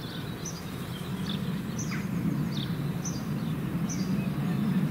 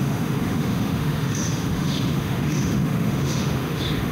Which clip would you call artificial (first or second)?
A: second